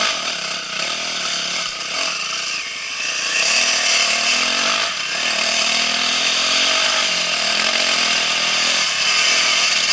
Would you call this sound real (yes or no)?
no